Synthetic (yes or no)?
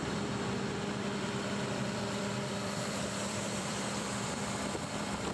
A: yes